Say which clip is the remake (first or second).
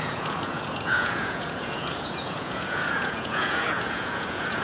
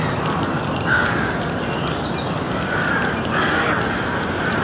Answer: first